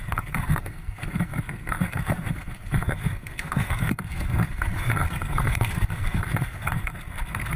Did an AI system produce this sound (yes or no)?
yes